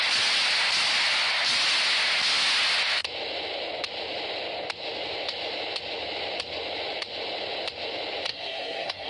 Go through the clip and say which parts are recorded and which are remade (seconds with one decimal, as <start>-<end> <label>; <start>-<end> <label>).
0.0-8.3 recorded; 8.3-9.1 remade